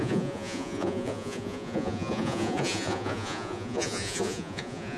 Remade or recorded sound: remade